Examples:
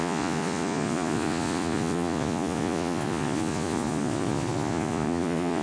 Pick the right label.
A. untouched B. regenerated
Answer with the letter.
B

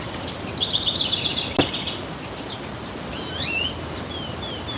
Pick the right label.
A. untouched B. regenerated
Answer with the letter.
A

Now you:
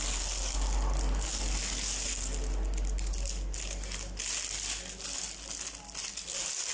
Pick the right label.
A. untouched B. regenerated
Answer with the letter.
A